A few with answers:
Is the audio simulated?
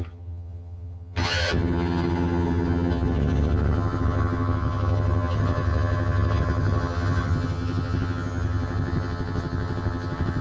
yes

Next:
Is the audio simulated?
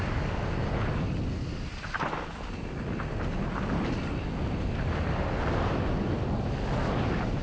no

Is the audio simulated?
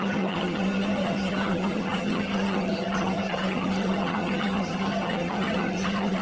yes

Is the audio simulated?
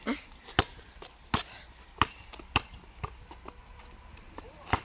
no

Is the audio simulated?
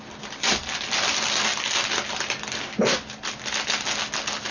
no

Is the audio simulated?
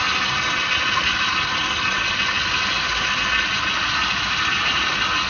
no